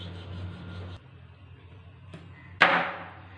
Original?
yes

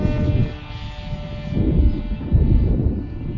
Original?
yes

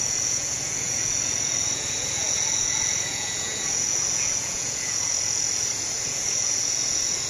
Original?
no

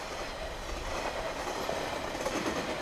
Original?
yes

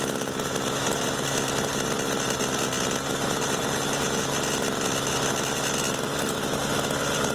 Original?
yes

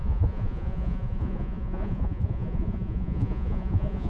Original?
no